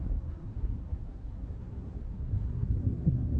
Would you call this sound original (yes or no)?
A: no